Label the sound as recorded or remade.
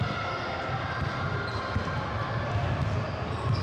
recorded